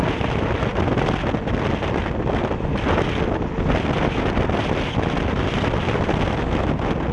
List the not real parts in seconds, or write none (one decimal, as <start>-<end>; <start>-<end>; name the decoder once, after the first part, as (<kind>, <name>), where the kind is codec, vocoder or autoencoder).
none